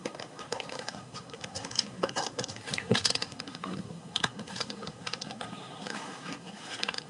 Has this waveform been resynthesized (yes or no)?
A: yes